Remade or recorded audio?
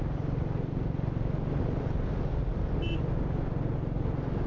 recorded